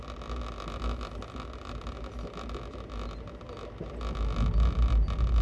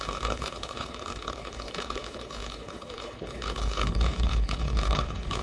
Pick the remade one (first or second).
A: second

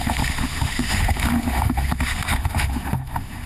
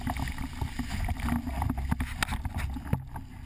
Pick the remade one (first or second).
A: first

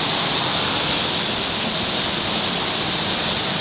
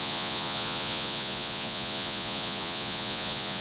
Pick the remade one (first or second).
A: second